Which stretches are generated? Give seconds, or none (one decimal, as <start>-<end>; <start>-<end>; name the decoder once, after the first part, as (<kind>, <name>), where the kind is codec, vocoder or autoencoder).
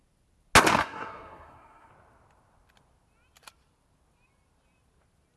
0.8-1.9 (codec, SNAC)